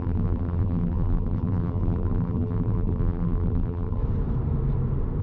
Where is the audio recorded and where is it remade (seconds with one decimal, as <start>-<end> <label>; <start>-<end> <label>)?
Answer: 0.0-4.0 remade; 4.0-5.2 recorded